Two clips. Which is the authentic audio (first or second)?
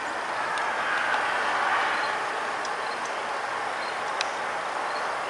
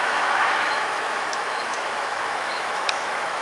first